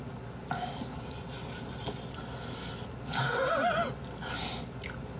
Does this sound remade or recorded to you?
recorded